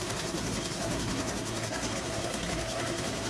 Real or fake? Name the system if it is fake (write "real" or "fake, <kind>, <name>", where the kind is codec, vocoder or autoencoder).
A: fake, codec, SNAC